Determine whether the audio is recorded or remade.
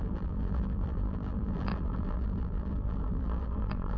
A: remade